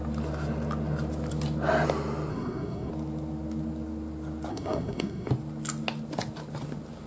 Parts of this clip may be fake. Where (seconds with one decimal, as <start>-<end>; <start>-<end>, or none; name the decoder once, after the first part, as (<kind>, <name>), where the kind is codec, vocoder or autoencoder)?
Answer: 2.3-2.9 (codec, SNAC); 4.5-5.3